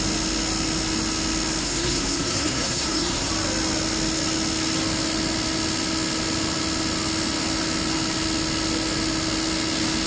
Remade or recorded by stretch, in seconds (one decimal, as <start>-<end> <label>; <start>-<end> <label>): 0.0-1.6 recorded; 1.6-3.3 remade; 3.3-10.1 recorded